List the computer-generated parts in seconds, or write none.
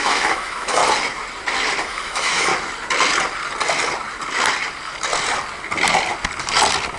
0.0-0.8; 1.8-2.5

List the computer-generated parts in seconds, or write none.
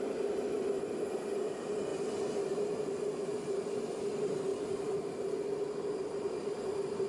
none